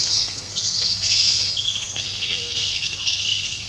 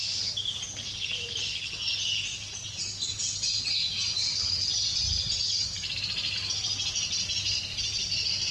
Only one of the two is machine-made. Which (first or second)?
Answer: first